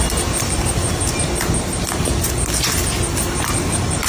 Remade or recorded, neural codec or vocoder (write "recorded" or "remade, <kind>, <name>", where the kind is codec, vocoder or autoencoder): recorded